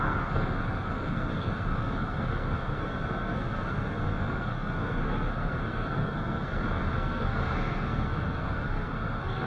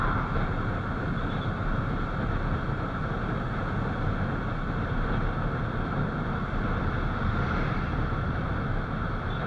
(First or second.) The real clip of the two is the second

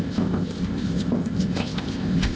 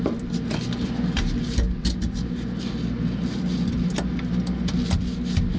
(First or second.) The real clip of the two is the second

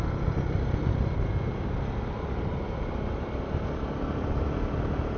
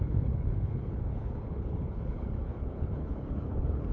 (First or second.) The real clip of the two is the first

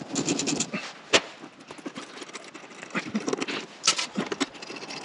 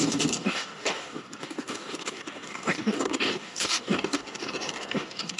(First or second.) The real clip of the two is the first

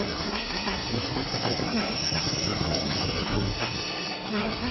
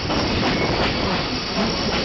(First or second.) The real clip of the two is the second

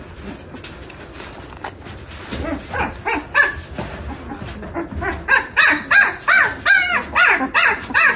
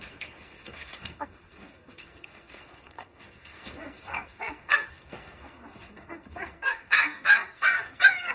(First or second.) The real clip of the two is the first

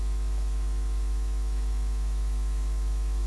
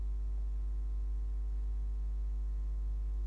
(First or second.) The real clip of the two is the second